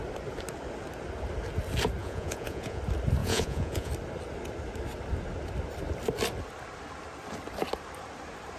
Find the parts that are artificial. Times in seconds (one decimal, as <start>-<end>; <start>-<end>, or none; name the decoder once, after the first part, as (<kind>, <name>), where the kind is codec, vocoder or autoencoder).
2.0-2.8 (vocoder, Vocos); 3.2-3.9